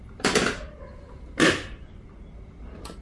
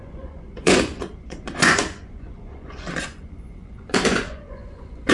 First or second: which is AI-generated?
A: second